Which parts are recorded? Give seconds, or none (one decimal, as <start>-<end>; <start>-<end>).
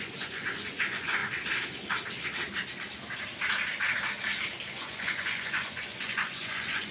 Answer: 1.2-4.7